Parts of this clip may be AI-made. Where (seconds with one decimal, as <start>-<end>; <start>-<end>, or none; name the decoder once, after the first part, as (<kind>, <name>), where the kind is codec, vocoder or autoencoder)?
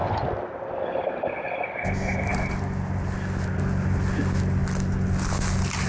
none